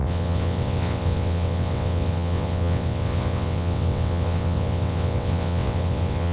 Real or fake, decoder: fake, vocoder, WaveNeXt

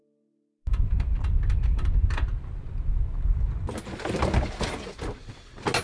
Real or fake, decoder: real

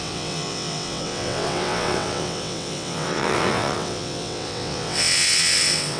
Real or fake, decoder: fake, vocoder, WaveNeXt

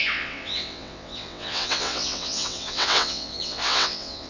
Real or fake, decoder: fake, vocoder, WaveNeXt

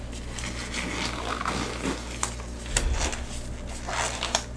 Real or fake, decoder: real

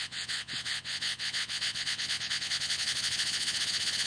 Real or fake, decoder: fake, vocoder, WaveNeXt